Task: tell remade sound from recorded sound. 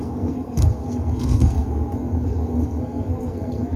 remade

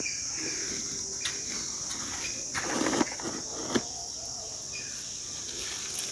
recorded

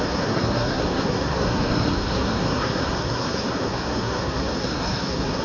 remade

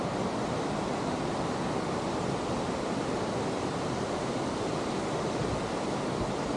recorded